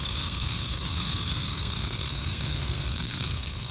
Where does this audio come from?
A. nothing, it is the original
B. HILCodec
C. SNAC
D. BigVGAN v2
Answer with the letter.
C